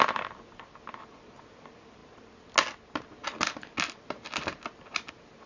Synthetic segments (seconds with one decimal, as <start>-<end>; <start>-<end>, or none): none